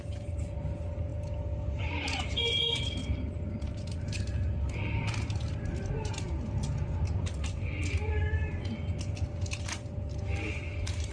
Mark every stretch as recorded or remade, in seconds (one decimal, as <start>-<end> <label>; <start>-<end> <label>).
0.0-11.1 recorded